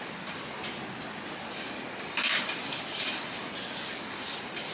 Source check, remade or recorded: recorded